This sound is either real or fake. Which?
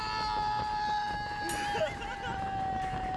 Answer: real